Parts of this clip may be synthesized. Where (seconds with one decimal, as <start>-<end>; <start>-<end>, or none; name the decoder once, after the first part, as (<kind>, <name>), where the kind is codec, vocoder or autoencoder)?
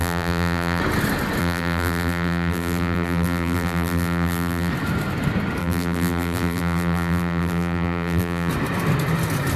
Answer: 0.0-0.8 (vocoder, BigVGAN v2); 1.4-4.7; 5.6-8.5